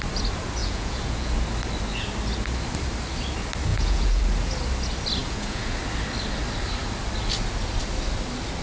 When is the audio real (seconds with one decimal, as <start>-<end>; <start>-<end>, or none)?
0.0-0.6; 1.3-3.7; 4.2-5.2; 5.8-8.6